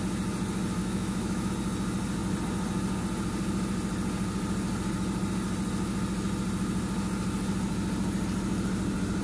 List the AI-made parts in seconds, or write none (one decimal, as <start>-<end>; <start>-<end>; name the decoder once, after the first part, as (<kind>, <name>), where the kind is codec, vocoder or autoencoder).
0.8-1.5 (autoencoder, DAC-VAE)

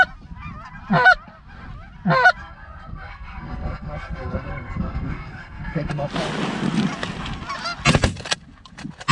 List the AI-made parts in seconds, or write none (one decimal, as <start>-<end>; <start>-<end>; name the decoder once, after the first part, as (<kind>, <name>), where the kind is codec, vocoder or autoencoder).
2.4-6.1 (codec, SNAC)